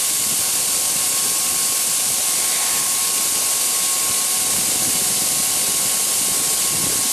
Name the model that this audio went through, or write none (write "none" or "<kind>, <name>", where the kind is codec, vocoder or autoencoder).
none